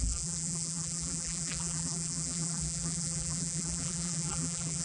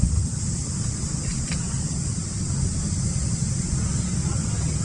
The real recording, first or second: second